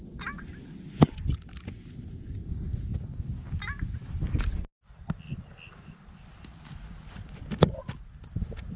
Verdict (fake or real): real